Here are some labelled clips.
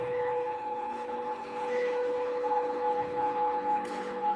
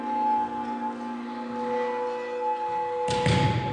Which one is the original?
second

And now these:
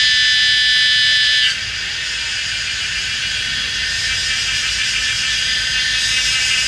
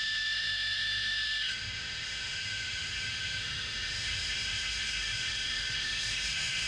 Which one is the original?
first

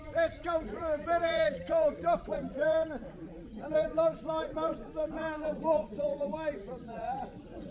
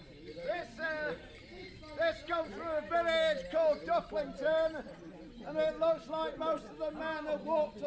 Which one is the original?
second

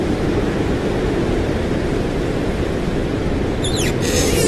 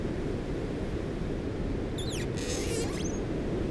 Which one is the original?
second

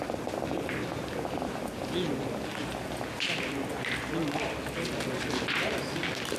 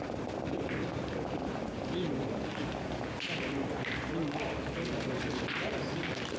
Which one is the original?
first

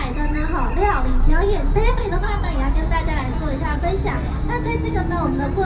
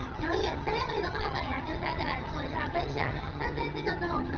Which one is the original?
first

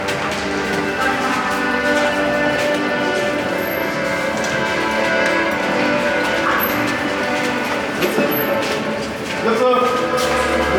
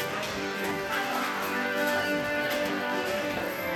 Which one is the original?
first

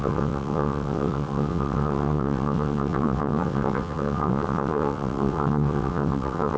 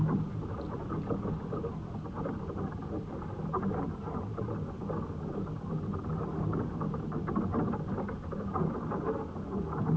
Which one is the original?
second